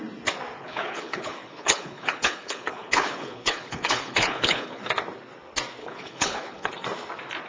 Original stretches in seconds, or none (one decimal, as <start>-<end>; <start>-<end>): 0.0-0.6; 4.9-5.8; 6.7-7.5